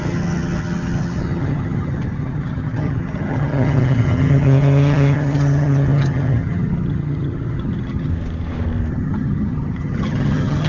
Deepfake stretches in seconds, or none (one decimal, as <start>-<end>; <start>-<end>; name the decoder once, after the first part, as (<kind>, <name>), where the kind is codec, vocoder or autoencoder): 0.0-8.1 (vocoder, HiFi-GAN); 8.9-10.7